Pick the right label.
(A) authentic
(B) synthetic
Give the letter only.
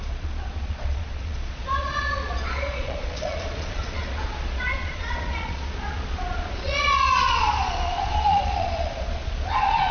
B